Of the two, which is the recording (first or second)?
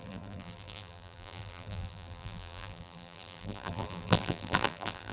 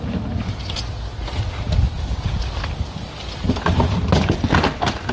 second